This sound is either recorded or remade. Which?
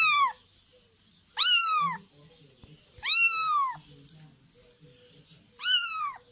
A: recorded